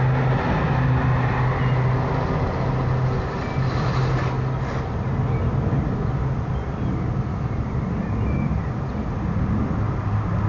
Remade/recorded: recorded